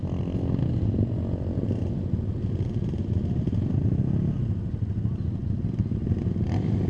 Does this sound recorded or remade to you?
recorded